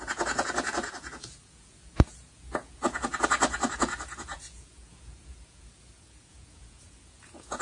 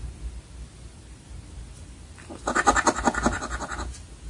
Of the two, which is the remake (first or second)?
first